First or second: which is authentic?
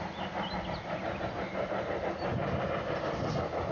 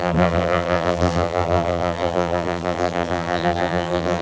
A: first